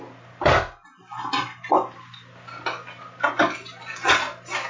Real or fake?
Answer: real